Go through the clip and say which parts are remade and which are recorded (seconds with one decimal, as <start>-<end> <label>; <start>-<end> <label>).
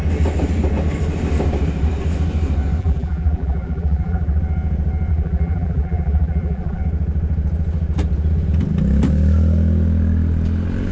0.0-2.8 recorded; 2.8-4.4 remade; 4.4-5.1 recorded; 5.1-6.8 remade; 6.8-10.9 recorded